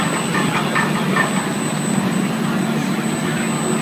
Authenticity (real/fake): real